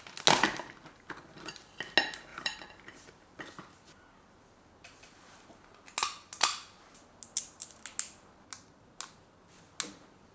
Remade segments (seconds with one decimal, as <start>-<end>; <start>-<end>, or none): 2.3-3.4